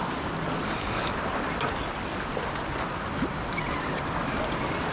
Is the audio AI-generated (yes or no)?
no